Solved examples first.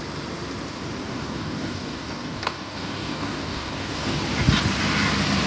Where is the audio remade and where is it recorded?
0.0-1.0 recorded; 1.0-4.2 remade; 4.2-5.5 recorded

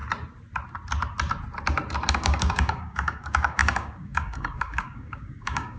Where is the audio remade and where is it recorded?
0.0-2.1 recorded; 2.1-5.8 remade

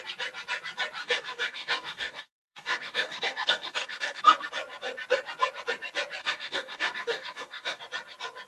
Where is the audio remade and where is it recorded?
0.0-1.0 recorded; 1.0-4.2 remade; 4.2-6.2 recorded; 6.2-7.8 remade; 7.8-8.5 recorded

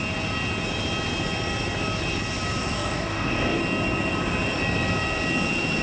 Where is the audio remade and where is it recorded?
0.0-2.6 recorded; 2.6-3.6 remade; 3.6-5.8 recorded

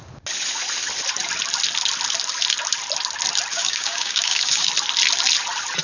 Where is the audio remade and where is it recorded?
0.0-3.5 recorded; 3.5-4.7 remade; 4.7-5.8 recorded

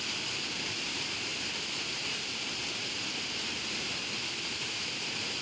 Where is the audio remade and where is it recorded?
0.0-5.4 recorded